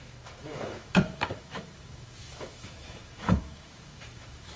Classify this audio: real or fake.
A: fake